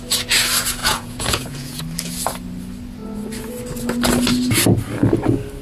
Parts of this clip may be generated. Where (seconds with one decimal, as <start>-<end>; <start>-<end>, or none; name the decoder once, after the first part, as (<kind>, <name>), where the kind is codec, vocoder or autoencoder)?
0.8-1.8 (vocoder, Vocos)